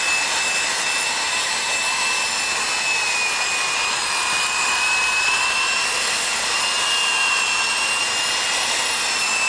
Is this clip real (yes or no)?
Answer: yes